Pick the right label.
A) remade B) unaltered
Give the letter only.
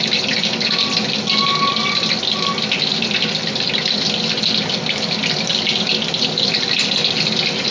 B